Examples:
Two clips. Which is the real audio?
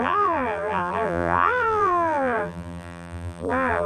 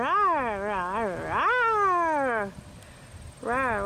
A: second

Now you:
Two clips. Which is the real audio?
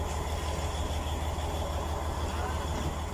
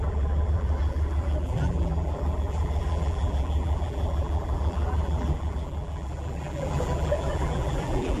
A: first